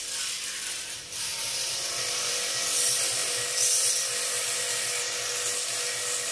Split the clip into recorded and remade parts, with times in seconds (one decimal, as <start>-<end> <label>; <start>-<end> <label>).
0.0-6.3 recorded

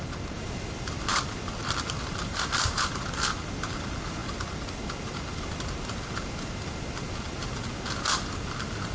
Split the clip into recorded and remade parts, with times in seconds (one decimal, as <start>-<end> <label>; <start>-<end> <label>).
0.0-8.9 recorded

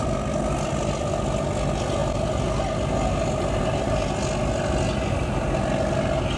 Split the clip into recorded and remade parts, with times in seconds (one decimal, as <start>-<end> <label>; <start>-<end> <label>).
0.0-6.4 recorded